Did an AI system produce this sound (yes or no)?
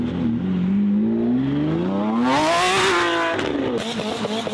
no